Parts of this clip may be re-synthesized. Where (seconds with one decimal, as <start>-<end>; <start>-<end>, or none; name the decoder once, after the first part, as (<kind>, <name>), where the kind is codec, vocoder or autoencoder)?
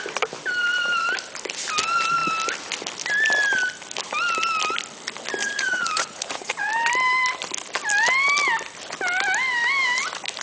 5.4-6.7 (vocoder, Vocos)